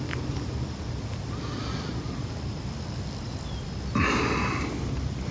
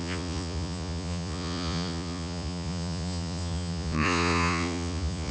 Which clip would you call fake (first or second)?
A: second